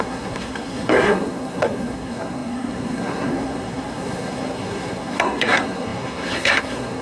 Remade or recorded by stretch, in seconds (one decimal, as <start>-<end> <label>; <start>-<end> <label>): 0.0-7.0 remade